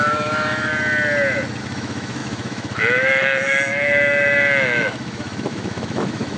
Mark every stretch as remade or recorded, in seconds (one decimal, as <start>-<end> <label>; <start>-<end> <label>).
0.0-0.7 remade; 0.7-1.6 recorded; 1.6-6.4 remade